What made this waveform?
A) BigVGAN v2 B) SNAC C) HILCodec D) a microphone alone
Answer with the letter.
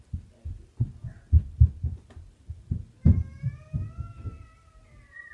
D